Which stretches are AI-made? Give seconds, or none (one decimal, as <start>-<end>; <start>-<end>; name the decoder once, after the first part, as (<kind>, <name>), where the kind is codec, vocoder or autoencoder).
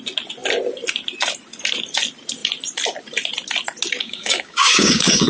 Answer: 4.0-5.3 (codec, DAC)